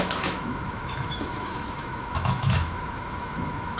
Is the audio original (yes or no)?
no